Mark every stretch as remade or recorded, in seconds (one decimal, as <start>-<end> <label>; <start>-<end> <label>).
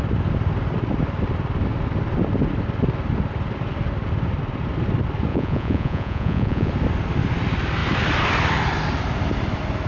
0.0-5.3 recorded; 5.3-6.7 remade; 6.7-9.9 recorded